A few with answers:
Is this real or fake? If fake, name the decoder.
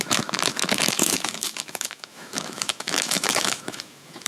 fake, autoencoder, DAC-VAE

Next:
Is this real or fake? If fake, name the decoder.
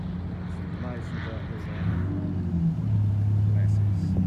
real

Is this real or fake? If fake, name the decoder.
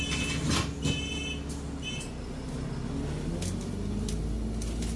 real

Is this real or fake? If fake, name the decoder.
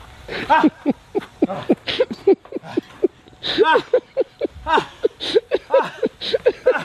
real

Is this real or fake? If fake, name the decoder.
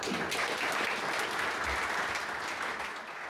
real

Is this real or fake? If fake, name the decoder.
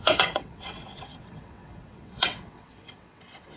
fake, vocoder, WaveNeXt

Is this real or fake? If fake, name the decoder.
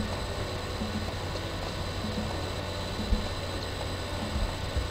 real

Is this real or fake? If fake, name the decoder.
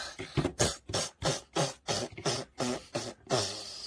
real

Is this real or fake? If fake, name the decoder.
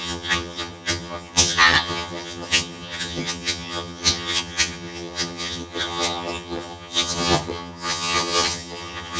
fake, vocoder, HiFi-GAN